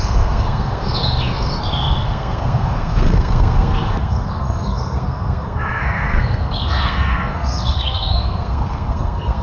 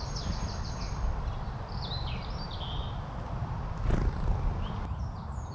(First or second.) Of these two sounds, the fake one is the first